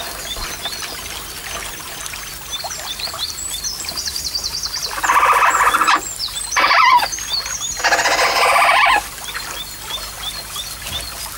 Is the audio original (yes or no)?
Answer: yes